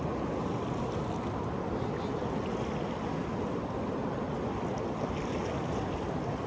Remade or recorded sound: recorded